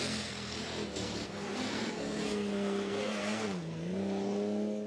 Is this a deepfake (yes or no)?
yes